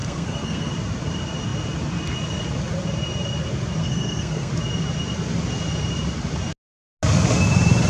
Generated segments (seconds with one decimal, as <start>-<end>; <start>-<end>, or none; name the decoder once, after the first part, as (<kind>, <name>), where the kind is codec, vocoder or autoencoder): 0.0-0.7 (codec, SNAC); 3.8-4.5